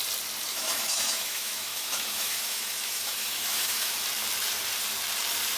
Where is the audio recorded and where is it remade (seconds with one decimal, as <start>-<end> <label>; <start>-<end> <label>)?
0.0-0.5 recorded; 0.5-3.9 remade; 3.9-5.6 recorded